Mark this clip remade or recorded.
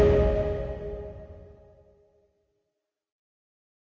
recorded